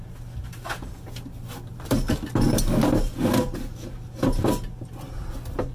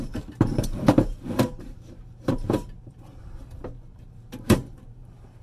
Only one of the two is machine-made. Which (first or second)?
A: second